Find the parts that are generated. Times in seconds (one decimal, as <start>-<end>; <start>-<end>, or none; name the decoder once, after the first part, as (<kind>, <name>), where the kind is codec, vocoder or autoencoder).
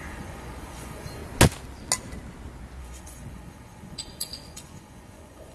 0.0-1.2 (vocoder, Vocos); 2.8-5.5